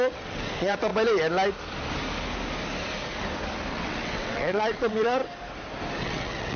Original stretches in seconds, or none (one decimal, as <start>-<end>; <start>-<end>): 0.9-3.7; 5.2-6.0